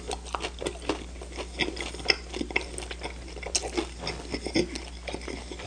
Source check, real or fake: real